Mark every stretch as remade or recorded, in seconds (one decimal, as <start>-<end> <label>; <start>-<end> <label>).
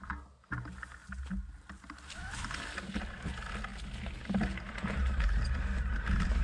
0.0-6.4 recorded